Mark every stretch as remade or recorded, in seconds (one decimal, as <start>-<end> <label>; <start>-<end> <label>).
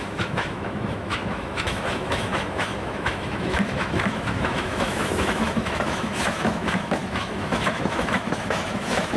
0.0-9.2 remade